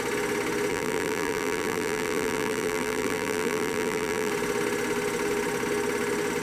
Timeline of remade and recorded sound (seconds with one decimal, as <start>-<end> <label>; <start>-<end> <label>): 0.0-0.7 recorded; 0.7-4.3 remade; 4.3-6.4 recorded